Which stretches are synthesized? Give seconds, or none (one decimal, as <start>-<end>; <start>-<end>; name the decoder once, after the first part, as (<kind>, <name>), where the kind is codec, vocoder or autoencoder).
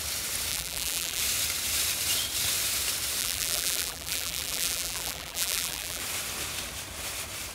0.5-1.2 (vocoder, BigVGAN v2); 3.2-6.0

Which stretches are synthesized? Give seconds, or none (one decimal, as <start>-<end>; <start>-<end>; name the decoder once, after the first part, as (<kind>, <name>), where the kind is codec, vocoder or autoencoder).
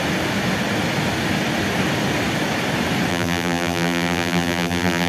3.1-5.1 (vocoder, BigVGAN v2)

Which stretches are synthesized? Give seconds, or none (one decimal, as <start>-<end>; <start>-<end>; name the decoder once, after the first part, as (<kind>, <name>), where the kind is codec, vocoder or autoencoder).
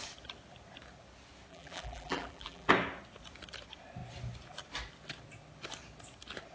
1.5-2.7 (vocoder, BigVGAN v2)